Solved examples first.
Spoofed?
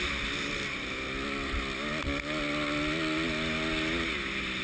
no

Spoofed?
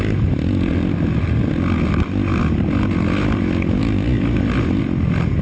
no